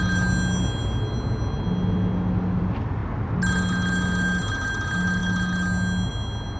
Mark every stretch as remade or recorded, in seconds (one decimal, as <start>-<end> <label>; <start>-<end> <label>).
0.0-6.6 recorded